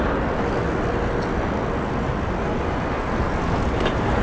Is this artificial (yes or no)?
no